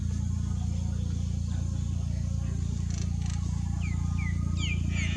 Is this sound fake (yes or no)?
no